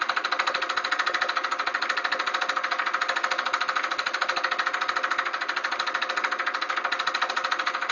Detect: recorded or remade recorded